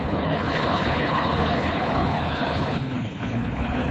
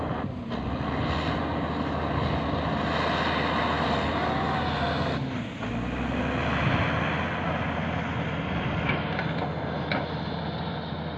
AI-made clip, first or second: first